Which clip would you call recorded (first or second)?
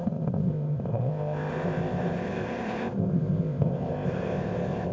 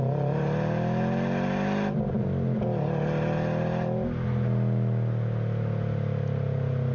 second